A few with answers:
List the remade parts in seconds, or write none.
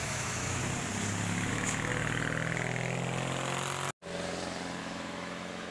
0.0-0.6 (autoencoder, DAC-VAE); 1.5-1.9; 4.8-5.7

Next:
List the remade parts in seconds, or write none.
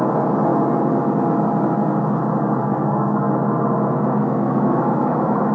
2.6-3.3 (codec, SNAC); 4.2-5.5